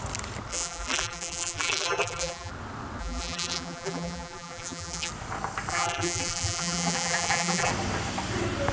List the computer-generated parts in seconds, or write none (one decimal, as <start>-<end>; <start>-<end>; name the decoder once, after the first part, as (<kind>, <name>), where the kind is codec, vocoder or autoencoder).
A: 0.5-2.5 (vocoder, BigVGAN v2); 3.0-5.1; 5.7-7.7